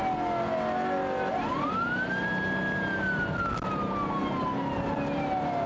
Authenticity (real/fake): real